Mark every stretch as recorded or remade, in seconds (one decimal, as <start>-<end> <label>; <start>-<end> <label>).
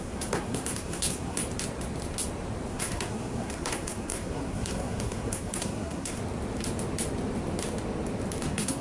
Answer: 0.0-1.4 remade; 1.4-2.7 recorded; 2.7-6.2 remade; 6.2-8.4 recorded; 8.4-8.8 remade